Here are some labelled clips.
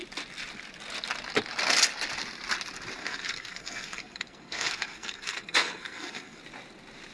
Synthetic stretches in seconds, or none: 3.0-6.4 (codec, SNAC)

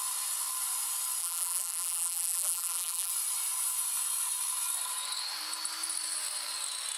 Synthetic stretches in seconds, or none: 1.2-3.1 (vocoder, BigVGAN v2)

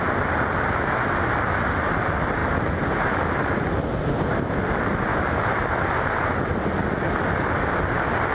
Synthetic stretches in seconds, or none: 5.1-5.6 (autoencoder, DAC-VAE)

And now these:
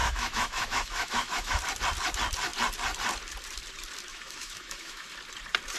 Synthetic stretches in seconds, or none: 0.0-1.6 (autoencoder, DAC-VAE); 4.1-5.1

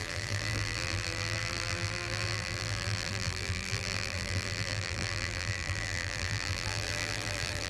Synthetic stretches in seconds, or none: 0.0-7.7 (vocoder, BigVGAN v2)

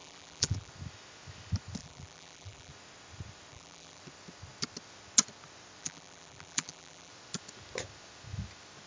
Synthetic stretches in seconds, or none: 0.0-0.7 (vocoder, BigVGAN v2); 1.8-2.7; 3.5-4.0; 5.8-7.1